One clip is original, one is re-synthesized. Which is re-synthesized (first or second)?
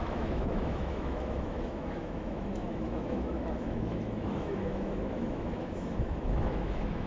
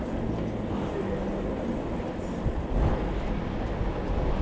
first